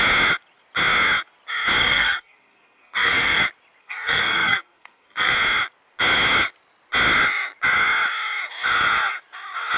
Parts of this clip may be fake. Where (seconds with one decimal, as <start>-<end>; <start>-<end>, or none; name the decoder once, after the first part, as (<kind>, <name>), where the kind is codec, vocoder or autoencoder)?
1.8-3.4 (codec, SNAC); 3.8-5.3

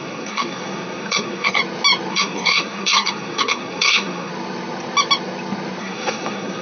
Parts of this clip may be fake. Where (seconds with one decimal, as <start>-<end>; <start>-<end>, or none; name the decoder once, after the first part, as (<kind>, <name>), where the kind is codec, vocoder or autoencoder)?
0.0-1.6 (codec, SNAC); 2.1-4.3; 5.8-6.6

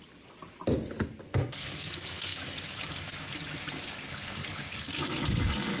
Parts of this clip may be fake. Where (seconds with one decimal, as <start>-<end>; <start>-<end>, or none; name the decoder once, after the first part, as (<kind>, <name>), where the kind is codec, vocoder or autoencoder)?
1.3-1.9 (codec, SNAC)

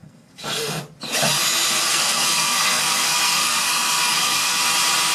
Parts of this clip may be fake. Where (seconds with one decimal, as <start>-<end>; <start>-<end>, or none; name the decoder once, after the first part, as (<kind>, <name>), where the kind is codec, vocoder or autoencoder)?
0.0-0.8 (codec, SNAC); 1.9-4.6

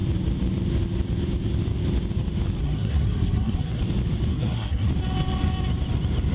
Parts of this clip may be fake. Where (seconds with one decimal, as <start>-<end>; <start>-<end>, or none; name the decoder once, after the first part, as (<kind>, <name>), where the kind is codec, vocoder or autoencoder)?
2.6-3.8 (codec, SNAC); 4.3-4.9

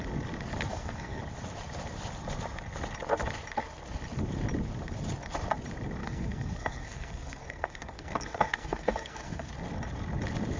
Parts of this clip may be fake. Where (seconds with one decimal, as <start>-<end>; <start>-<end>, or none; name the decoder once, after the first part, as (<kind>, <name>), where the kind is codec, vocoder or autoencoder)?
0.7-1.2 (codec, SNAC); 6.0-9.5